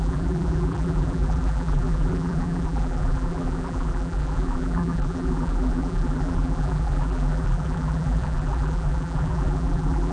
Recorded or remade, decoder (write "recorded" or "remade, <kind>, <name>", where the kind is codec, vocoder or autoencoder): remade, vocoder, BigVGAN v2